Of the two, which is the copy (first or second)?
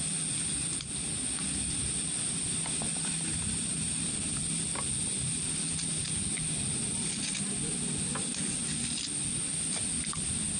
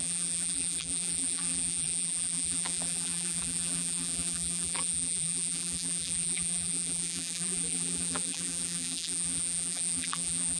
second